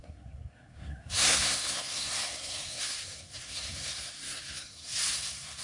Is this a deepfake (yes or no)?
yes